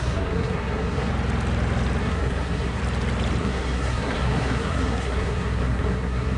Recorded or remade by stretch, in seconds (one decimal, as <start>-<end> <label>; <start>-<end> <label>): 0.0-1.1 remade; 1.1-2.0 recorded; 2.0-2.8 remade; 2.8-3.4 recorded; 3.4-6.4 remade